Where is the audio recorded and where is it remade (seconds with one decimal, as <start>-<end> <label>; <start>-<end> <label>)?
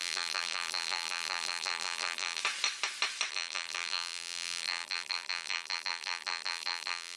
0.0-2.4 remade; 2.4-3.3 recorded; 3.3-7.2 remade